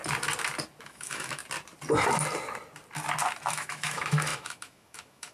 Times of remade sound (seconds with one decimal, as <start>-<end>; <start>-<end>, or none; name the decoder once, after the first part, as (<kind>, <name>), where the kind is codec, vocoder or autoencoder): 0.8-1.4 (autoencoder, DAC-VAE); 3.5-5.3